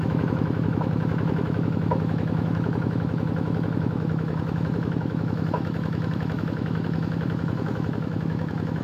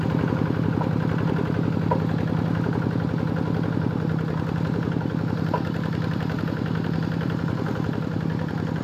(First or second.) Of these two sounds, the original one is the second